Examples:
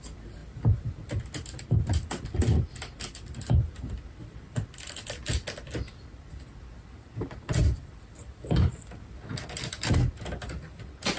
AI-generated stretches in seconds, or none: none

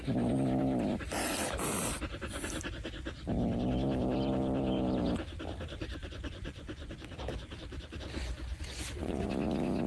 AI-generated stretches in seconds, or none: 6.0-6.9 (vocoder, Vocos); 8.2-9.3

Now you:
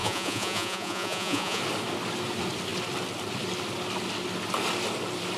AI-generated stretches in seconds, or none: 0.0-1.6 (vocoder, Vocos)